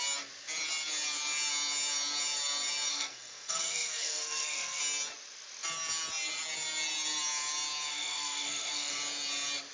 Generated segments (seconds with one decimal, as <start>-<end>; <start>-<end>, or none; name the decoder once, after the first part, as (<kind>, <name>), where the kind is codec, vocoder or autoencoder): 2.9-4.8 (codec, SNAC); 7.9-8.9